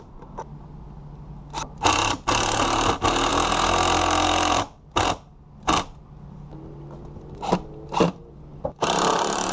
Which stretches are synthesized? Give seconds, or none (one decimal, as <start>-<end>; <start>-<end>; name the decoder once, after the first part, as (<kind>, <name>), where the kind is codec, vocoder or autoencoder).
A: none